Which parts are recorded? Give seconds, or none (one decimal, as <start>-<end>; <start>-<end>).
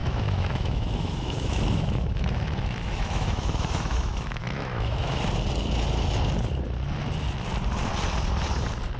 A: 5.2-9.0